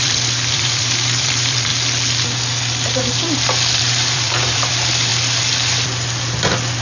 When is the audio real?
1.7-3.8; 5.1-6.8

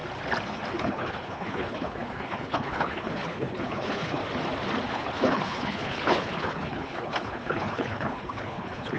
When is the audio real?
0.0-0.8; 4.2-4.9

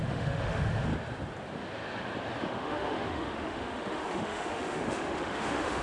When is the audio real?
0.9-2.4

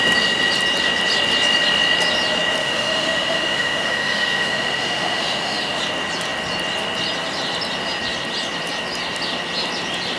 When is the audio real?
0.0-2.6; 5.8-10.2